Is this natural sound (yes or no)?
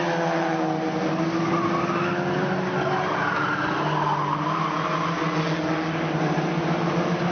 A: yes